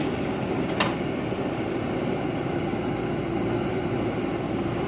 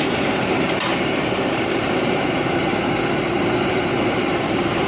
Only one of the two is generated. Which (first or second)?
second